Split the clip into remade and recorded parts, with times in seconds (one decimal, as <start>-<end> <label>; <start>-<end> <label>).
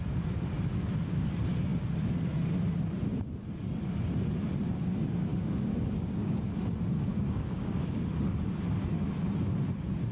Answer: 0.0-5.3 recorded; 5.3-6.4 remade; 6.4-7.1 recorded; 7.1-8.0 remade; 8.0-10.1 recorded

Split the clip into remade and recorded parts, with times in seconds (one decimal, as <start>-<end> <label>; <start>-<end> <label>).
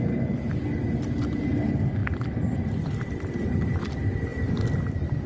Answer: 0.0-5.3 recorded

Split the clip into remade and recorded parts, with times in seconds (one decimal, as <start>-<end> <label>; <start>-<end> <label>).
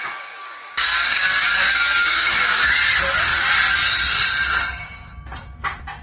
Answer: 0.0-0.6 recorded; 0.6-2.8 remade; 2.8-6.0 recorded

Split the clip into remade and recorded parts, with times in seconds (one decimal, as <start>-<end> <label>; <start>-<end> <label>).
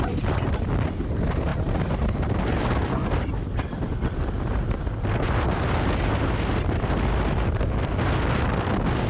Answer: 0.0-9.1 recorded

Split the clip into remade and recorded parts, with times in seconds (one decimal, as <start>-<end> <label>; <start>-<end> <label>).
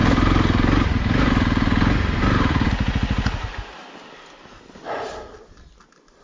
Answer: 0.0-6.2 recorded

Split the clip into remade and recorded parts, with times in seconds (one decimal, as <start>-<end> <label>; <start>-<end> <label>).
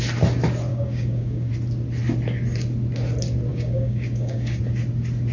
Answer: 0.0-0.7 recorded; 0.7-1.5 remade; 1.5-3.5 recorded; 3.5-4.6 remade; 4.6-5.3 recorded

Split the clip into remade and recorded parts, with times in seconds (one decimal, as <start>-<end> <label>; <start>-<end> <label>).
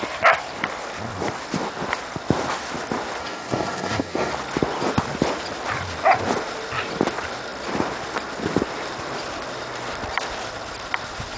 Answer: 0.0-3.2 recorded; 3.2-4.3 remade; 4.3-11.4 recorded